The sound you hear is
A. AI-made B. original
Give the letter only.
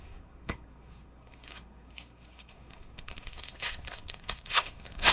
A